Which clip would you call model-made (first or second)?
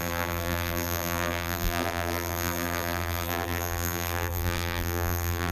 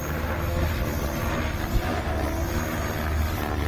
first